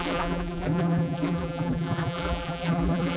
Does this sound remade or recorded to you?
remade